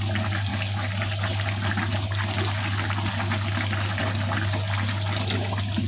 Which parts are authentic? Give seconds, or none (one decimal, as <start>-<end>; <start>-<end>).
0.0-5.9